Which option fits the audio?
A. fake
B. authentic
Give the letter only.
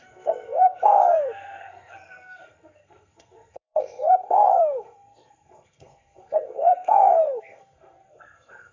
A